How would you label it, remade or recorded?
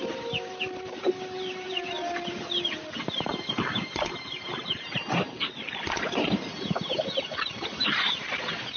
remade